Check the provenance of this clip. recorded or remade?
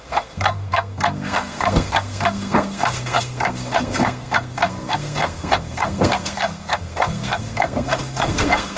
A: remade